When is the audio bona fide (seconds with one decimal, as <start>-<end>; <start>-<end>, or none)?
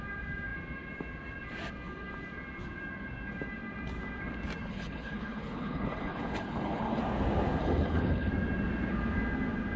0.0-4.7; 7.0-7.6; 8.3-9.8